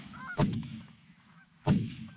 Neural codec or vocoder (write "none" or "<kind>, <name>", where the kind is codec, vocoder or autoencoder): autoencoder, DAC-VAE